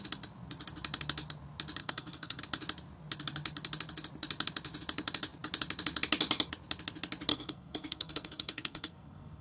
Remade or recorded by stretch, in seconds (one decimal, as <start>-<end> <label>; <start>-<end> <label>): 0.0-1.8 recorded; 1.8-2.4 remade; 2.4-7.3 recorded; 7.3-9.4 remade